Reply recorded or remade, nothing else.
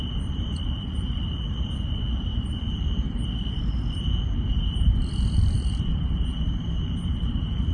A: remade